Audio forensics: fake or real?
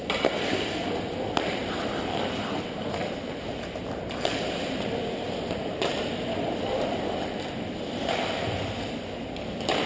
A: real